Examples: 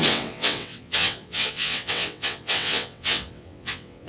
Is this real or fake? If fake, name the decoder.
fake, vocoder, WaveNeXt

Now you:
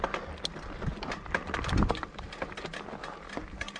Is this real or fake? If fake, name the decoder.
real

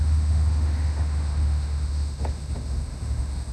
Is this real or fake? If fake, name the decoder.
fake, autoencoder, DAC-VAE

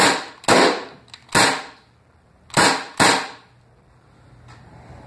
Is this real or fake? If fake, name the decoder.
real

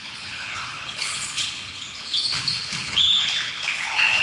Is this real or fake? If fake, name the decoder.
fake, codec, HILCodec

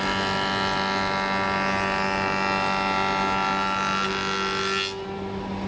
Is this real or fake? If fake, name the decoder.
real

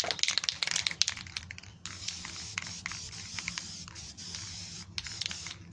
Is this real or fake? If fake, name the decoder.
real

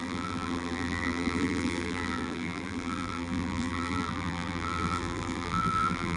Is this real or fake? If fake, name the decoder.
fake, vocoder, BigVGAN v2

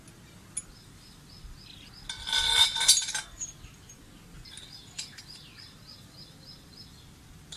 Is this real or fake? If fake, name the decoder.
real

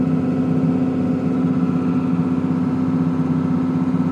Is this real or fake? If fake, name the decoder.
real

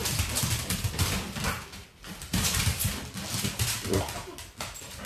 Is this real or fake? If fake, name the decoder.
real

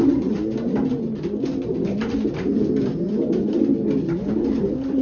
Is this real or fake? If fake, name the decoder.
real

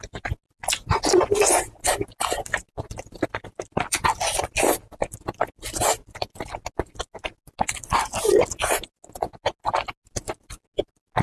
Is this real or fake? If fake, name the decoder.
real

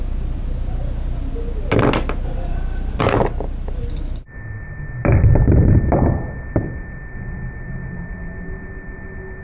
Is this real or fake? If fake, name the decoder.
real